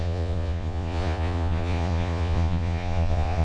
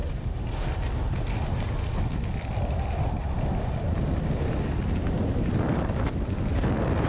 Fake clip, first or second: first